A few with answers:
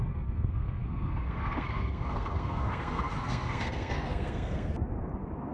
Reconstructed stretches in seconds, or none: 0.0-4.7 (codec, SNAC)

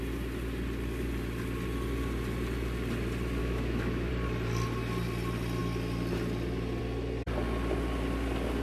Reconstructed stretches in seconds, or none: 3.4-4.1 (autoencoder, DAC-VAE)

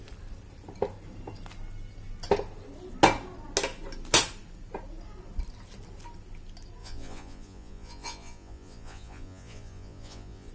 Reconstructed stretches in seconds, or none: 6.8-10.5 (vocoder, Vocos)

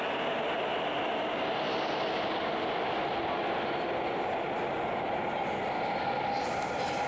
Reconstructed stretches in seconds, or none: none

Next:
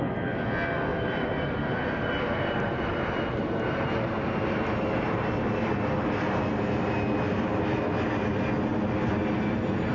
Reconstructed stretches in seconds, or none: 0.9-5.3 (vocoder, BigVGAN v2)

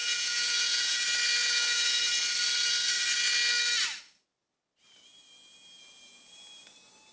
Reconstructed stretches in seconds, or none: 0.0-1.0 (vocoder, Vocos); 1.4-2.0

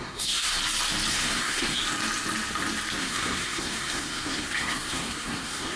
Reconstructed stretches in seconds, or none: 0.0-0.6 (codec, SNAC); 1.1-1.8; 3.0-5.8

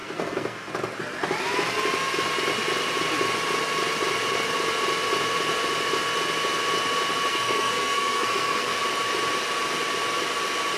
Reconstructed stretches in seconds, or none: 0.0-0.7 (codec, SNAC); 7.3-8.8